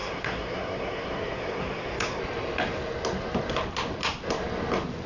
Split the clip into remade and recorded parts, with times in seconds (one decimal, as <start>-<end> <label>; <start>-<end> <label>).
0.0-2.2 remade; 2.2-5.1 recorded